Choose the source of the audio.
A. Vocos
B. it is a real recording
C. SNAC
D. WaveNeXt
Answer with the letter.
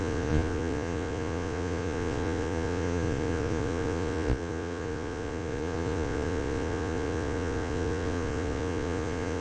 A